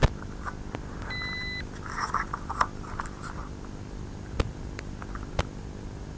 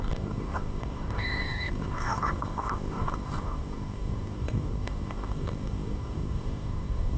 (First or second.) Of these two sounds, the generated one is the second